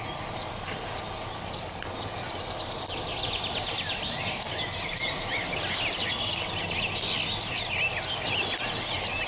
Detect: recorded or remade recorded